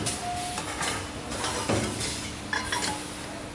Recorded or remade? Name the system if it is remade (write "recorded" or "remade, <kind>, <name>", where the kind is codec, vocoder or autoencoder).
recorded